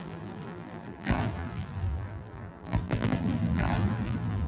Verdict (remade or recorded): remade